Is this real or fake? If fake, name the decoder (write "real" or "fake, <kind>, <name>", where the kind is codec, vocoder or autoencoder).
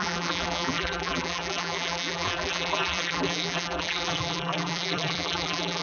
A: fake, vocoder, BigVGAN v2